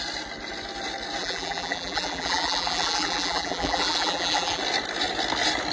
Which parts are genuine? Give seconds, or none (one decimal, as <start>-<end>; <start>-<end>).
0.0-1.2; 4.6-5.7